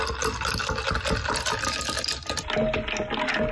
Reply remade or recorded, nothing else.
recorded